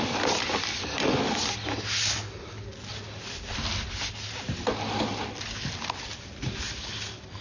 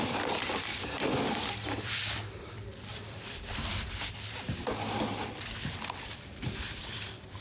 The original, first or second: first